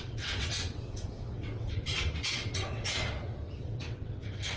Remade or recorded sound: remade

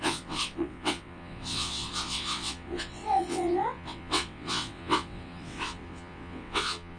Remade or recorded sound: remade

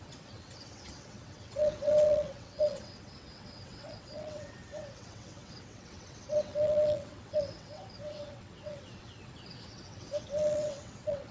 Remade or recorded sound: remade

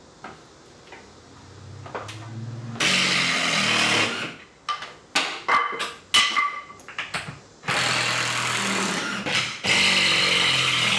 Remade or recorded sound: recorded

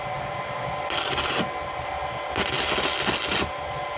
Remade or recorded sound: recorded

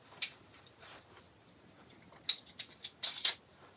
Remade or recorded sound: recorded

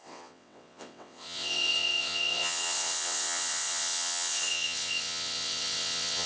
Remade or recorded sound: remade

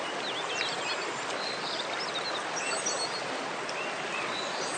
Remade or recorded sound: recorded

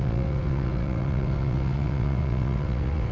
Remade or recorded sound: remade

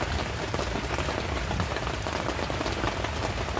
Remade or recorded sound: recorded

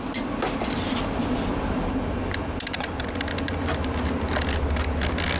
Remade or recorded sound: recorded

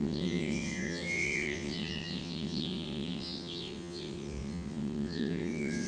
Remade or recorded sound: remade